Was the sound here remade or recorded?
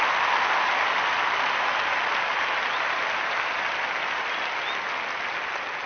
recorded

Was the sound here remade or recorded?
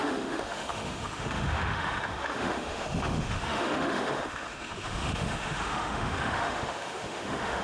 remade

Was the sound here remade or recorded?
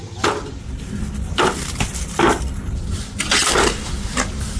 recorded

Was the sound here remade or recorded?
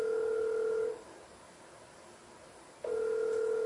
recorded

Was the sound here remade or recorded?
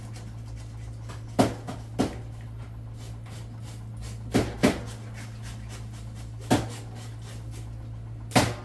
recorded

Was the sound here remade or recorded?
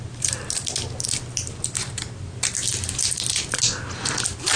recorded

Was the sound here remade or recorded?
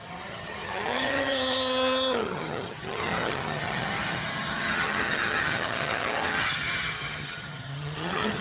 remade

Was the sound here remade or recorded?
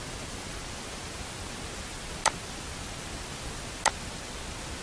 recorded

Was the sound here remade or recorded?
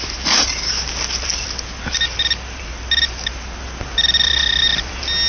recorded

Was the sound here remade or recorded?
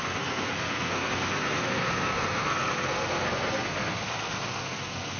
remade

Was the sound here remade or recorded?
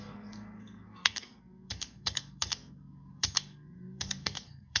remade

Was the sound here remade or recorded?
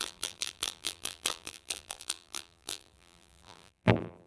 remade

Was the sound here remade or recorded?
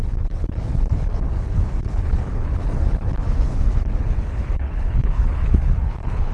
remade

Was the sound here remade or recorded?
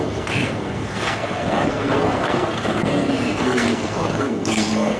remade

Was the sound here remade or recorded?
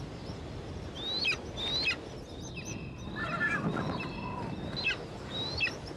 recorded